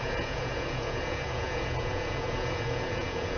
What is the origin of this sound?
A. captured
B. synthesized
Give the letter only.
B